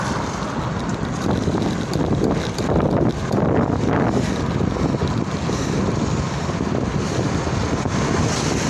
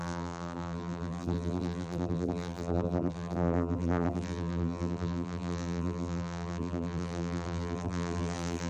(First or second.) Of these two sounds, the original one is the first